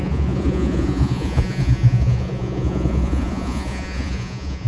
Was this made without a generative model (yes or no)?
no